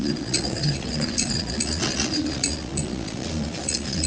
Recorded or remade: remade